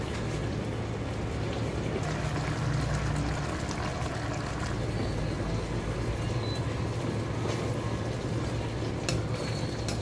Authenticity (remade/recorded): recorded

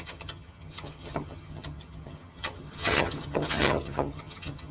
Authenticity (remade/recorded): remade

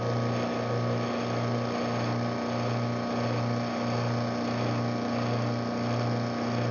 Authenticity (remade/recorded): recorded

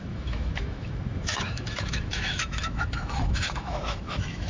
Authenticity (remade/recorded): remade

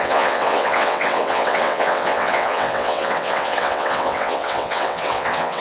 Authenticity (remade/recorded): remade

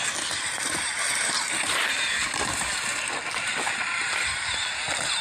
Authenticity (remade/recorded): recorded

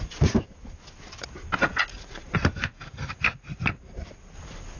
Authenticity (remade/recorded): recorded